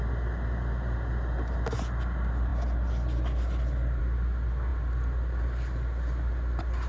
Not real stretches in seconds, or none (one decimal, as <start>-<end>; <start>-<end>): none

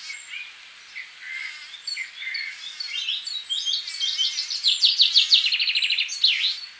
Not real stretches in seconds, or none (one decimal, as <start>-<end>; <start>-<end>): none

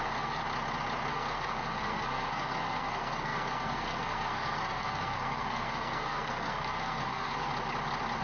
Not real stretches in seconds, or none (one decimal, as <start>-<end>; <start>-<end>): 0.0-0.4; 1.1-7.5

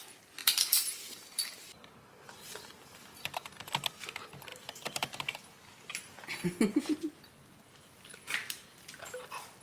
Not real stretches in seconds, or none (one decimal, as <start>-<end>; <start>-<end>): 0.4-3.5; 4.5-5.5

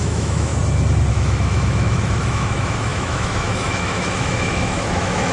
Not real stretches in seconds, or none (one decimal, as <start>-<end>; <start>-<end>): 0.0-0.5; 1.1-5.3

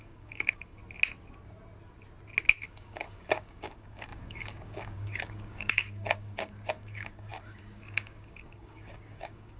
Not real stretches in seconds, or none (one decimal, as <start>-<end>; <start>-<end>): 0.0-0.8; 2.7-9.6